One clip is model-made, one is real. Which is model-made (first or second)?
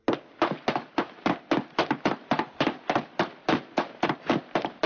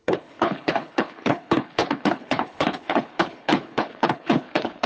second